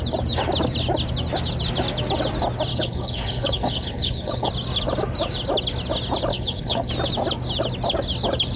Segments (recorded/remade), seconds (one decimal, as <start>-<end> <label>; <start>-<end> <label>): 0.0-2.7 recorded; 2.7-4.5 remade; 4.5-6.3 recorded; 6.3-6.9 remade; 6.9-8.6 recorded